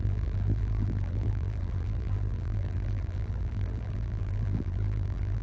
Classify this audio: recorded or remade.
remade